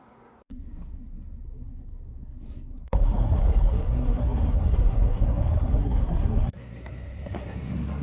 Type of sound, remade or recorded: remade